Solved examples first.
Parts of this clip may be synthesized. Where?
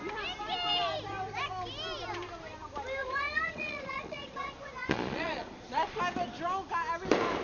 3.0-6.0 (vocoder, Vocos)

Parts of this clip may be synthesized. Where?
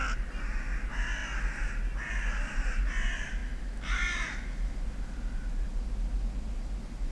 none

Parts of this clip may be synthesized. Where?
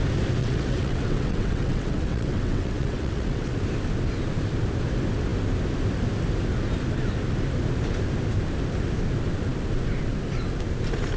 0.4-3.6 (vocoder, WaveNeXt)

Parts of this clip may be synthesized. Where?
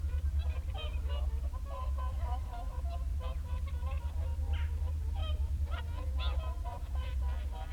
0.4-1.1 (vocoder, BigVGAN v2); 2.1-2.6; 5.2-5.8; 6.7-7.2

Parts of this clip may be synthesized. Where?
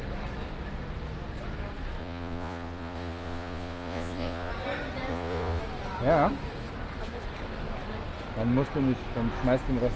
2.0-4.5 (vocoder, Vocos); 5.1-5.6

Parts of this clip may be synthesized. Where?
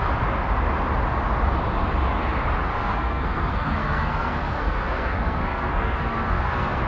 2.7-6.9 (codec, SNAC)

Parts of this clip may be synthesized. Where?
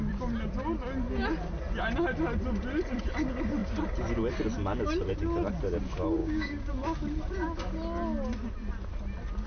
6.2-6.7 (codec, DAC)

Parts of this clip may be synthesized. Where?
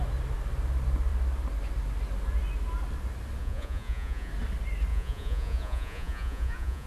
3.4-4.3 (vocoder, Vocos); 4.9-6.9